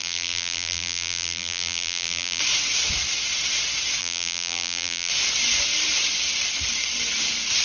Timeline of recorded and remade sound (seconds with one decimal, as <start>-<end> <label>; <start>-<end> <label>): 0.0-2.4 remade; 2.4-4.0 recorded; 4.0-5.1 remade; 5.1-7.6 recorded